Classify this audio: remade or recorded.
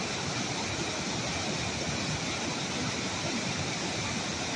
recorded